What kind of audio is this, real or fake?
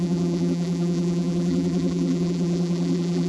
fake